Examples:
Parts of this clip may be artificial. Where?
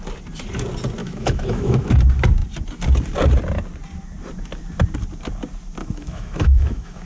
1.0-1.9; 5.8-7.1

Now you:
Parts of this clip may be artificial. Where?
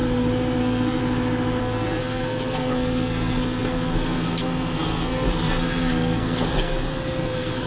0.6-1.0; 1.6-7.7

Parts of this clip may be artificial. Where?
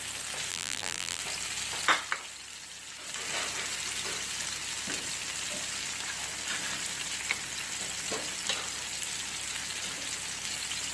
0.5-1.2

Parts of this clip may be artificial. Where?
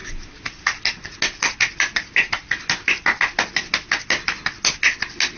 none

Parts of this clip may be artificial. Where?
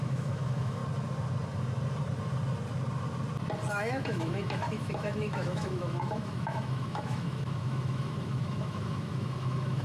0.0-0.8; 3.7-9.8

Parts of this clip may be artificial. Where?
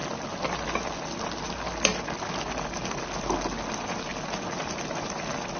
none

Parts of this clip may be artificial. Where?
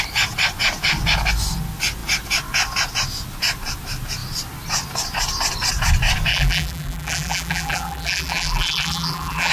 6.3-9.5